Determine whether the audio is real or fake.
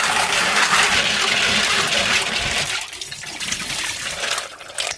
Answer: fake